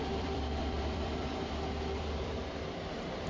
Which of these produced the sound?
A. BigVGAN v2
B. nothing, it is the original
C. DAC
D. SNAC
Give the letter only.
A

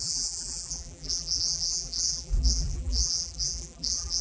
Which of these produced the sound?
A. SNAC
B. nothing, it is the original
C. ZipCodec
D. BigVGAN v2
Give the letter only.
D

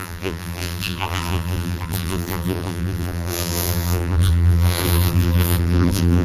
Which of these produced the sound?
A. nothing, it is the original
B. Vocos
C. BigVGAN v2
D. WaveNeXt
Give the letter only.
C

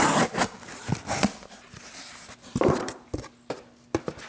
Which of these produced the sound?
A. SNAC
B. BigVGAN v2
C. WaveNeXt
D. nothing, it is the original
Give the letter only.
D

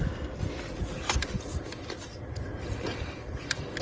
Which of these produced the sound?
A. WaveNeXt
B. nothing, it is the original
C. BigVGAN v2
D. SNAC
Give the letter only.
C